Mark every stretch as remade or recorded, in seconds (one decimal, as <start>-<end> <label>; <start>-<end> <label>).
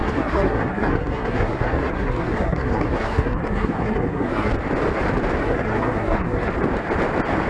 0.0-4.5 remade; 4.5-5.4 recorded; 5.4-6.5 remade; 6.5-7.5 recorded